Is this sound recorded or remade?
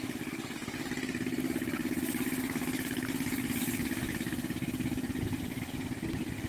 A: recorded